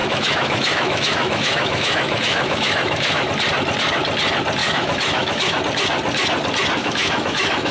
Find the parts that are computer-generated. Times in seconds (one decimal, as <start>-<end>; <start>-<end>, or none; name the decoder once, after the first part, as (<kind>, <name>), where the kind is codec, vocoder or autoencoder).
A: 0.0-3.3 (autoencoder, DAC-VAE); 4.6-5.6; 6.8-7.7